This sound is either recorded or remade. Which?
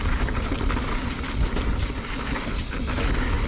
recorded